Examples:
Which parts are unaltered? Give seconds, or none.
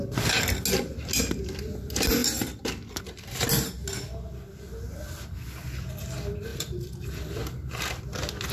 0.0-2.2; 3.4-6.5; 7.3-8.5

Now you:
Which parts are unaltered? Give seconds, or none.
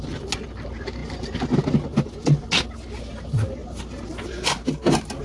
0.0-5.2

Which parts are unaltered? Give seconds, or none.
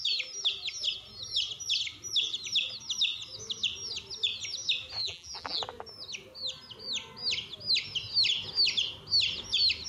0.0-5.0; 5.6-9.9